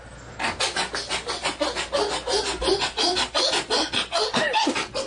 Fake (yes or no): no